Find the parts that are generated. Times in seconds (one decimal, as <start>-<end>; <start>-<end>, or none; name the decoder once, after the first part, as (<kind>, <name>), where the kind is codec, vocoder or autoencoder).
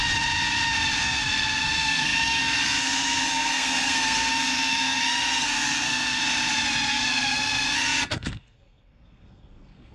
1.0-6.2 (codec, SNAC); 6.9-9.9